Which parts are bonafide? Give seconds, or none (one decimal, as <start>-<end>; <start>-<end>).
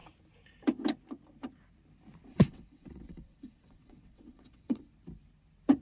0.0-2.3; 4.9-5.8